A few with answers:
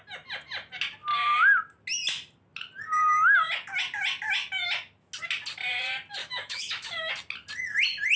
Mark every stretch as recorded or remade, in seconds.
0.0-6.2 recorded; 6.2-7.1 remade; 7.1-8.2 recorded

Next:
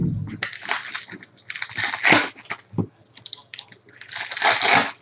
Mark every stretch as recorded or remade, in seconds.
0.0-5.0 recorded

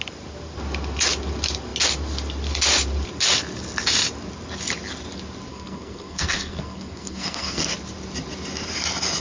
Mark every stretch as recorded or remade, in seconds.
0.0-5.5 recorded; 5.5-7.7 remade; 7.7-9.2 recorded

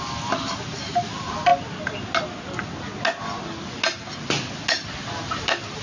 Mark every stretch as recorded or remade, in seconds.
0.0-5.8 recorded

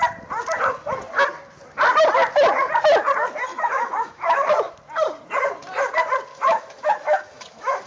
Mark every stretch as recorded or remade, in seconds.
0.0-3.5 recorded; 3.5-4.7 remade; 4.7-6.3 recorded; 6.3-7.9 remade

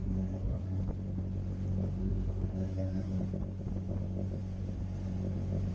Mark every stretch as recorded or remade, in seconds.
0.0-0.8 remade; 0.8-2.0 recorded; 2.0-3.2 remade; 3.2-5.7 recorded